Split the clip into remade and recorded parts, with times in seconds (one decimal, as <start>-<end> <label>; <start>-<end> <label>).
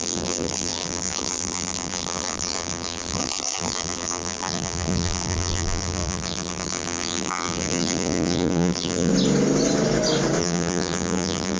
0.0-9.1 remade; 9.1-10.4 recorded; 10.4-11.6 remade